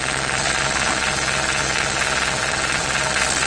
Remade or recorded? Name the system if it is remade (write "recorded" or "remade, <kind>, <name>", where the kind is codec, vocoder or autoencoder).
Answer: remade, vocoder, Vocos